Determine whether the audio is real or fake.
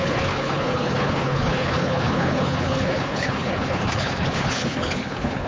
fake